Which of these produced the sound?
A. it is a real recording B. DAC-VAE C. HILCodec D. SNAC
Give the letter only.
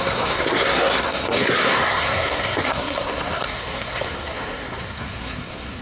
D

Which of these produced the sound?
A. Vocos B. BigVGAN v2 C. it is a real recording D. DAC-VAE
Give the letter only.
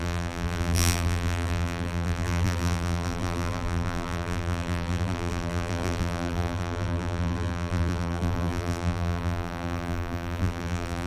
B